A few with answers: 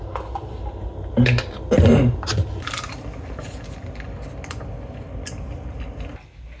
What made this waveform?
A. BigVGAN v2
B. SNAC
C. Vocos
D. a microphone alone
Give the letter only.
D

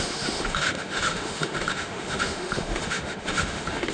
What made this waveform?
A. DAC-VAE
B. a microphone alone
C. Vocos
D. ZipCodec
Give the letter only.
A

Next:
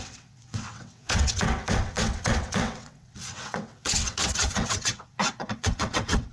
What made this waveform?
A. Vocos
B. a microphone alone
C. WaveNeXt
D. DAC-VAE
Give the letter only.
C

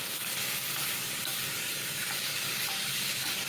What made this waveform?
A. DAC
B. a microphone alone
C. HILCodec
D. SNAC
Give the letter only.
A